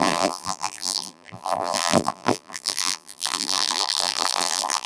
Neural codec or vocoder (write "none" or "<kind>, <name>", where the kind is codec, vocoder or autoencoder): vocoder, BigVGAN v2